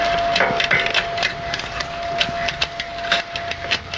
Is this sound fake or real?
real